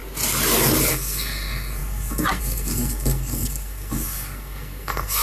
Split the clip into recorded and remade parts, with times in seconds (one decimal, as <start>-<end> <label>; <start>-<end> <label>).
0.0-0.9 recorded; 0.9-5.2 remade